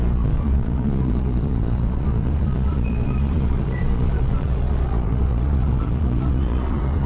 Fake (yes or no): yes